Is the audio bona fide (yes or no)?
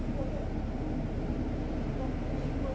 yes